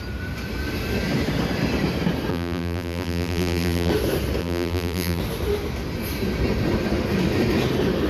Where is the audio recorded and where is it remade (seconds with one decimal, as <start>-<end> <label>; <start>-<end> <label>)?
0.0-2.3 recorded; 2.3-3.9 remade; 3.9-4.4 recorded; 4.4-5.2 remade; 5.2-8.1 recorded